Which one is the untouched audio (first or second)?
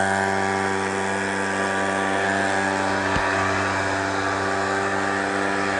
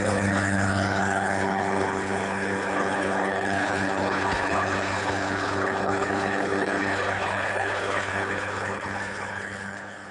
first